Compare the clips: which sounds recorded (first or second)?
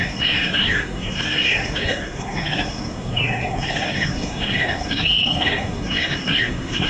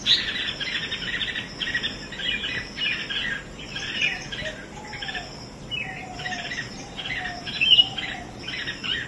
second